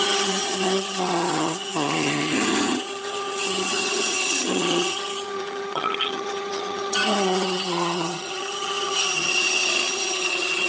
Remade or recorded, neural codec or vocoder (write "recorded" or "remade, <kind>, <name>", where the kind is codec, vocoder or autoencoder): remade, vocoder, HiFi-GAN